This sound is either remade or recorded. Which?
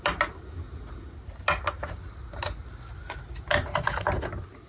recorded